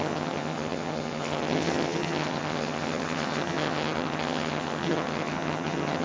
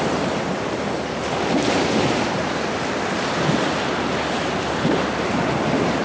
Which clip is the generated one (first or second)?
first